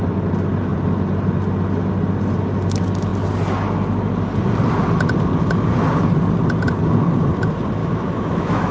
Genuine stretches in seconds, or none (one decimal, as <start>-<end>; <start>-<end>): 0.0-7.8